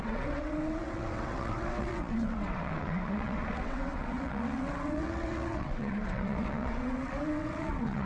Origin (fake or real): fake